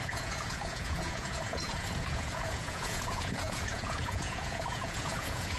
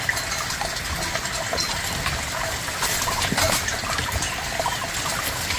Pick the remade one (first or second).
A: first